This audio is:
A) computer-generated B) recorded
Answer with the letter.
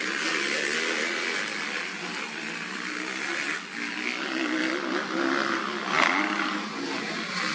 B